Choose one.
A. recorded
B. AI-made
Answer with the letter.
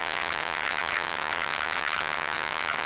B